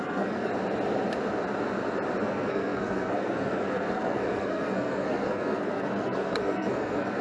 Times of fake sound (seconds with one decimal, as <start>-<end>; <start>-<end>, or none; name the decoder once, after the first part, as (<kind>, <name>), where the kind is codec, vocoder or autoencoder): 0.0-0.5 (codec, SNAC); 2.2-7.2